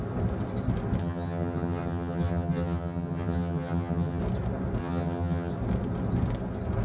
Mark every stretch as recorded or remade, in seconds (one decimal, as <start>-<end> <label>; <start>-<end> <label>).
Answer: 0.0-1.0 recorded; 1.0-4.2 remade; 4.2-4.8 recorded; 4.8-5.5 remade; 5.5-6.8 recorded